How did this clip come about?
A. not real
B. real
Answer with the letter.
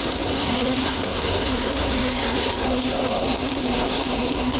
A